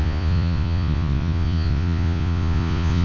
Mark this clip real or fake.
fake